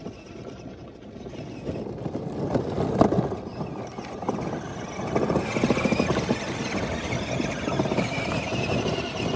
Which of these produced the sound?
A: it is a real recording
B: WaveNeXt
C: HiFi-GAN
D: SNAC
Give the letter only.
A